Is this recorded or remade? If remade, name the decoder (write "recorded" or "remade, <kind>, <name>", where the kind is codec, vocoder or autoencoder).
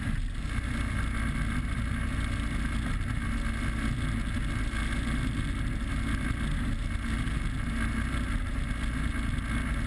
recorded